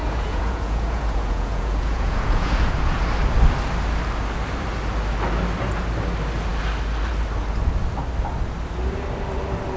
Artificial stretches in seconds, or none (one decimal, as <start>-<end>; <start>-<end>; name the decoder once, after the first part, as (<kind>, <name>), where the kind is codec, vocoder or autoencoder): 0.0-3.0 (vocoder, Vocos)